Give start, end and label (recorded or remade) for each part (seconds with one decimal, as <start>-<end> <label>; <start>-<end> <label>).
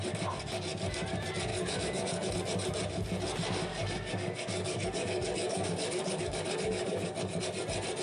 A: 0.0-1.5 recorded; 1.5-2.3 remade; 2.3-3.7 recorded; 3.7-7.4 remade; 7.4-8.0 recorded